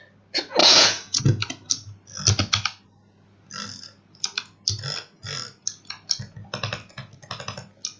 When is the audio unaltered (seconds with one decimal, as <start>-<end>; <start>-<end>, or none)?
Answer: 0.0-0.6; 1.2-8.0